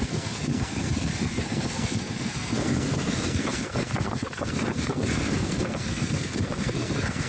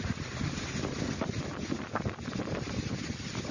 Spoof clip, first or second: first